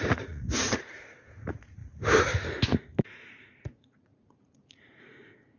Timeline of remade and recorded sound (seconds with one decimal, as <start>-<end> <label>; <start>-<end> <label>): 0.0-1.8 remade; 1.8-3.0 recorded; 3.0-5.6 remade

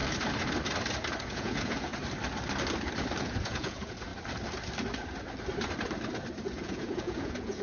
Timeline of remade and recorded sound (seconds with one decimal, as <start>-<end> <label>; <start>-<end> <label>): 0.0-1.2 recorded; 1.2-1.9 remade; 1.9-3.2 recorded; 3.2-4.1 remade; 4.1-6.4 recorded; 6.4-7.6 remade

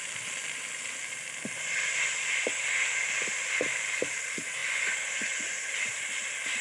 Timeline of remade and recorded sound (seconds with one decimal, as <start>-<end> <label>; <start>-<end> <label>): 0.0-4.6 recorded; 4.6-5.7 remade; 5.7-6.6 recorded

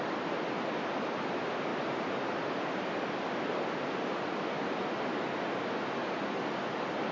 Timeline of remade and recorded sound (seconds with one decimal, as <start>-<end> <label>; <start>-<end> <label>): 0.0-7.1 recorded

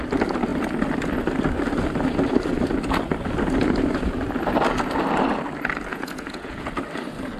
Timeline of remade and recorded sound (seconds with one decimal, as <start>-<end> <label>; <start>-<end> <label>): 0.0-5.9 recorded; 5.9-6.7 remade; 6.7-7.4 recorded